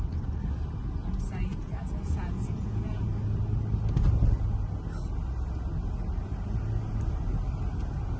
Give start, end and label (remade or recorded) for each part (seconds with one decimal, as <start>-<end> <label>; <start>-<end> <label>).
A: 0.0-1.5 recorded; 1.5-3.0 remade; 3.0-8.2 recorded